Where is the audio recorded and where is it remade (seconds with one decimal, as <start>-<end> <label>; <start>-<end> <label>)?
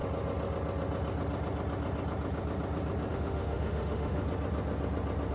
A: 0.0-3.1 recorded; 3.1-4.2 remade; 4.2-5.3 recorded